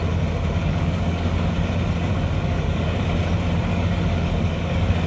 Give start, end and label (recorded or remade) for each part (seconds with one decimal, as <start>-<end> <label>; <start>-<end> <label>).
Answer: 0.0-0.6 recorded; 0.6-1.5 remade; 1.5-2.1 recorded; 2.1-3.0 remade; 3.0-3.7 recorded; 3.7-5.1 remade